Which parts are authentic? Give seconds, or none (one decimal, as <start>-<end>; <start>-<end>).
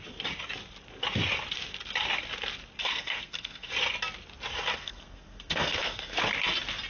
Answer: 0.0-2.8; 3.7-4.8; 6.2-6.9